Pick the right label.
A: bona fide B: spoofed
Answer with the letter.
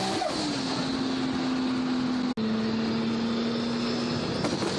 A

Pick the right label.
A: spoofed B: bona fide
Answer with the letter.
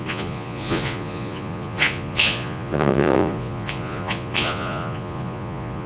A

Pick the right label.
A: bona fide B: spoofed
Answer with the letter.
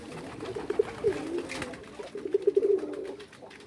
A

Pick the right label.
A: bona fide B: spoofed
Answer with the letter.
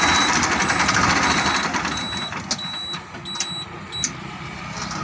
A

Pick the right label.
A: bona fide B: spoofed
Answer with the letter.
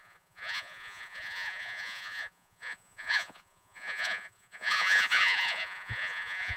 B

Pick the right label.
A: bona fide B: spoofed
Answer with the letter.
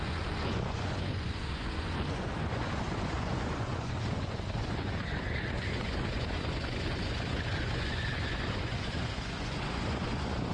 B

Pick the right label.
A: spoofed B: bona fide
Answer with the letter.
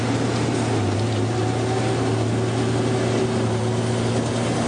B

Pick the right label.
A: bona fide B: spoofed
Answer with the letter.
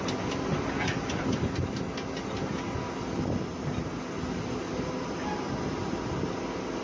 A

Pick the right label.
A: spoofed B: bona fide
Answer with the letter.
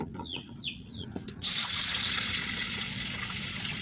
A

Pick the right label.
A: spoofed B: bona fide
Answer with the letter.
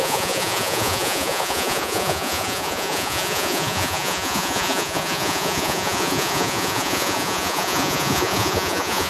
A